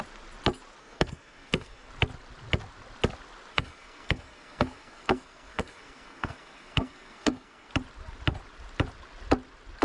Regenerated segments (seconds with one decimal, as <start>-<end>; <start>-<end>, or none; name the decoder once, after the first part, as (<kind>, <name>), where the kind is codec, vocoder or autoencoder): 0.8-1.9 (codec, SNAC); 3.5-7.7